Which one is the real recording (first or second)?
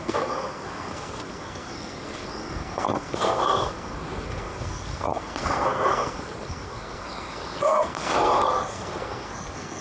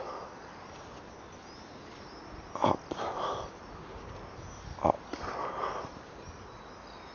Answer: second